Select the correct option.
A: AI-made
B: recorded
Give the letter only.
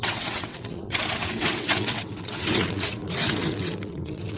A